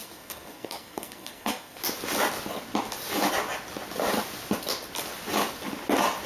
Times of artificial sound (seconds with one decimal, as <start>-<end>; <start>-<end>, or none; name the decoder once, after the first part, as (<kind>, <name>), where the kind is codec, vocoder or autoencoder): 0.0-1.8 (codec, SNAC)